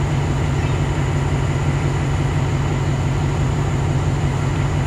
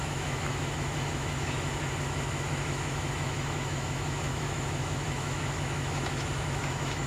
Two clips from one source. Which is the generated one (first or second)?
second